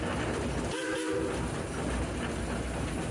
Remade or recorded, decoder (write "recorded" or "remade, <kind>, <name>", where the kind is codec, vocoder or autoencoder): recorded